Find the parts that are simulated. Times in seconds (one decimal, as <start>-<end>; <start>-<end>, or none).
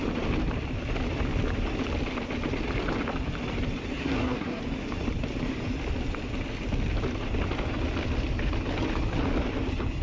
4.0-4.6